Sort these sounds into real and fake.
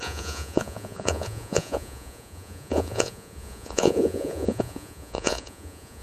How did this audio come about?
fake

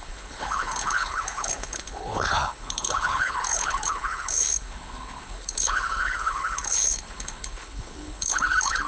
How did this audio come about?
fake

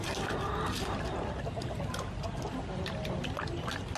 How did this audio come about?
real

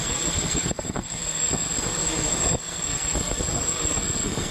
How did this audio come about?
fake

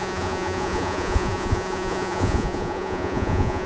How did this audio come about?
fake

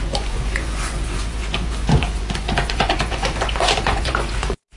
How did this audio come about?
fake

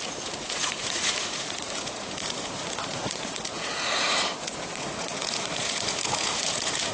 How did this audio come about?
fake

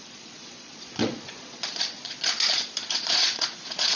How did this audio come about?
fake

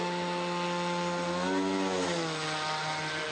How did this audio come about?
real